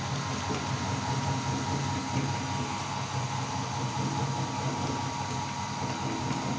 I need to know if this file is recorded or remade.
recorded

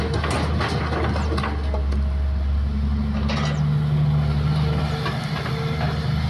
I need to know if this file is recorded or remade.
recorded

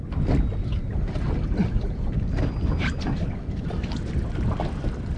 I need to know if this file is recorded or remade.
recorded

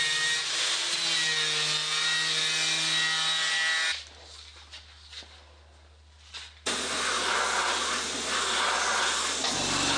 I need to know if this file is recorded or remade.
recorded